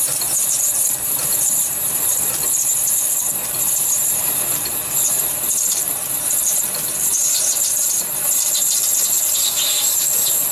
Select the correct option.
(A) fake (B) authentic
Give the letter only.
A